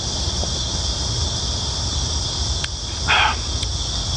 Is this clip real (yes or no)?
yes